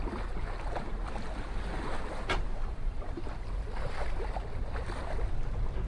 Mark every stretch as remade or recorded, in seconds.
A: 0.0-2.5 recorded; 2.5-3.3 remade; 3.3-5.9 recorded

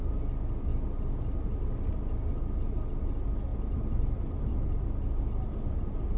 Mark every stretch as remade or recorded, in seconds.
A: 0.0-0.7 recorded; 0.7-1.8 remade; 1.8-6.2 recorded